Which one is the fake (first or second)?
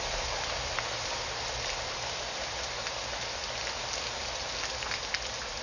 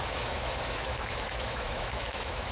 second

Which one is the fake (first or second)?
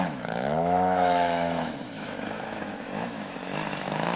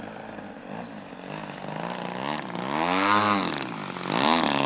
first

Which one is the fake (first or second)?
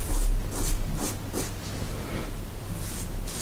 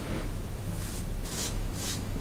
second